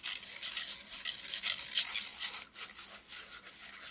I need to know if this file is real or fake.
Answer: real